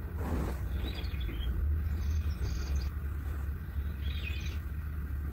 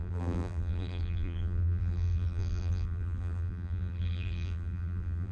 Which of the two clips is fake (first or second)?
second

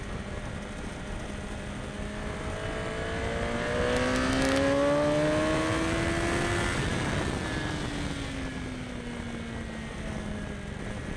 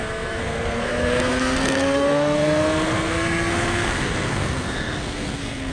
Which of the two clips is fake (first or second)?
second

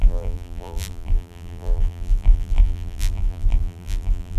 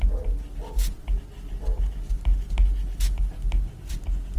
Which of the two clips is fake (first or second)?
first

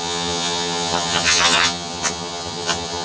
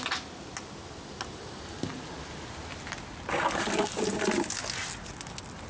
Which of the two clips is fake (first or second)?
first